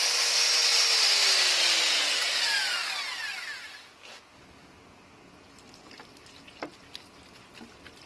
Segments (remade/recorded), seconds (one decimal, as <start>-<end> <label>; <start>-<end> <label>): 0.0-8.1 recorded